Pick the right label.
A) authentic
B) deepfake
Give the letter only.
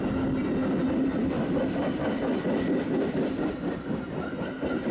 A